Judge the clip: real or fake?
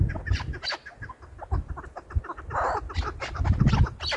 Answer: real